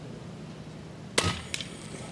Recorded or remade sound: recorded